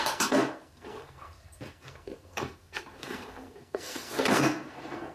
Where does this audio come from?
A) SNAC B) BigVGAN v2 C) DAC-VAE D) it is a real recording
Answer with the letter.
A